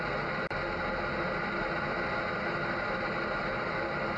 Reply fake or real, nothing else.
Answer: real